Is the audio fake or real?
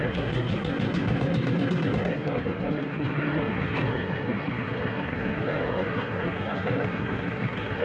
fake